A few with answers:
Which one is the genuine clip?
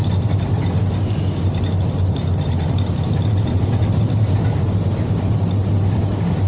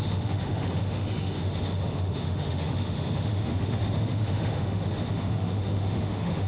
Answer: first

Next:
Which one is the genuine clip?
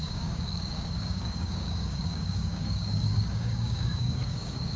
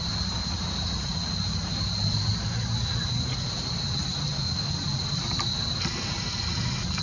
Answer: second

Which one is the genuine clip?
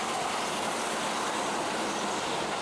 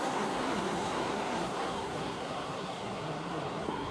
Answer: first